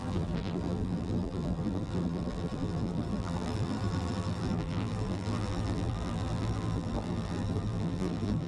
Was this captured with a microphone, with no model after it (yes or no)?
no